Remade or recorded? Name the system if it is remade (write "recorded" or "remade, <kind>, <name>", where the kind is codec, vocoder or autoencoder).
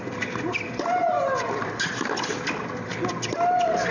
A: recorded